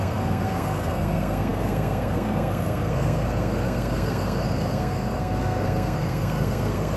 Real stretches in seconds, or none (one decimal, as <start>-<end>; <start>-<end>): none